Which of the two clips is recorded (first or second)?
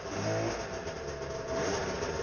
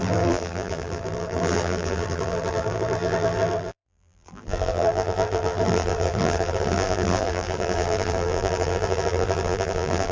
first